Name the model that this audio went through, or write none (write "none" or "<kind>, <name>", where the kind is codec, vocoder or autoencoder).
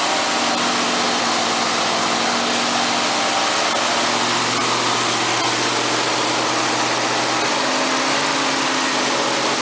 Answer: none